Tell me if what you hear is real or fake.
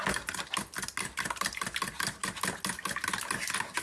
real